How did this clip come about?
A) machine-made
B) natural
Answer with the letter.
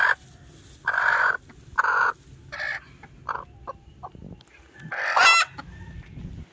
B